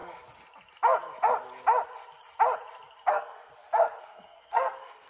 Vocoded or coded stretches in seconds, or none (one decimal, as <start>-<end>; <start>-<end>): 3.1-3.5; 4.0-5.1